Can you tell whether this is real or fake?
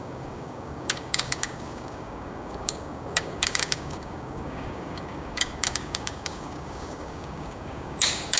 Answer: fake